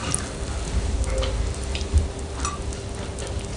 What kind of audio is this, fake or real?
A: real